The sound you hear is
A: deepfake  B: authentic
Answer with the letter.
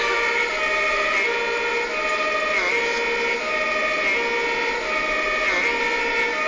B